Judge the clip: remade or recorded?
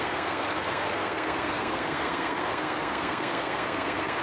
remade